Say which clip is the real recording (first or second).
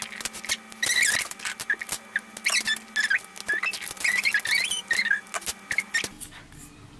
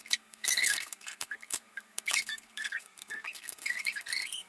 first